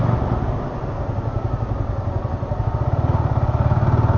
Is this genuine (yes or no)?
yes